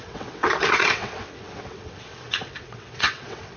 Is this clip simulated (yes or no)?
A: yes